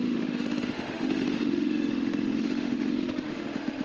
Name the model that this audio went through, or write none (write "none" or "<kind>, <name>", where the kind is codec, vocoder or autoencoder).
autoencoder, DAC-VAE